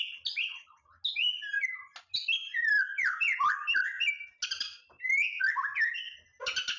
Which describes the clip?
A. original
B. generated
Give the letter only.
A